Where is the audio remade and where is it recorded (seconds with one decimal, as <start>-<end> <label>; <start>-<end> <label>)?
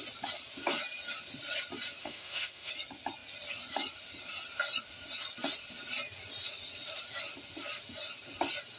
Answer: 0.0-2.0 recorded; 2.0-2.7 remade; 2.7-8.8 recorded